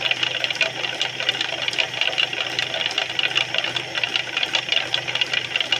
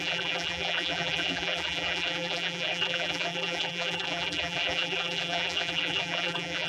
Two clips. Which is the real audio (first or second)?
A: first